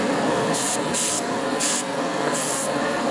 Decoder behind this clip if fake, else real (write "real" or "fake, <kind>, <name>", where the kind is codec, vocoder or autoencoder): fake, codec, SNAC